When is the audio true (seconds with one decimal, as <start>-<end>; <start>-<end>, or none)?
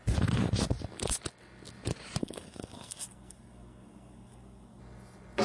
0.0-2.2; 4.8-5.4